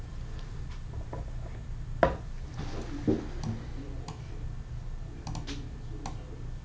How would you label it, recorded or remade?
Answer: recorded